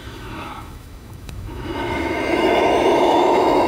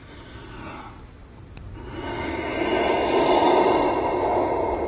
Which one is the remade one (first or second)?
first